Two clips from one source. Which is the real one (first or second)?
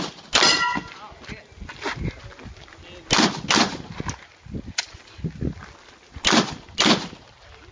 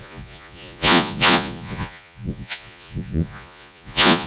first